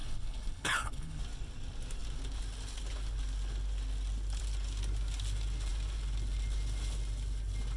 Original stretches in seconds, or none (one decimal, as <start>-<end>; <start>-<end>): 1.2-7.8